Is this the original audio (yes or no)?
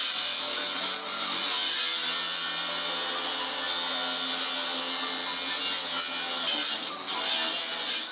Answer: yes